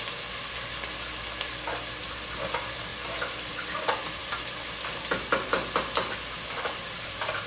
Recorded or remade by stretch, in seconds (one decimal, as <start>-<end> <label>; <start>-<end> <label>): 0.0-7.5 recorded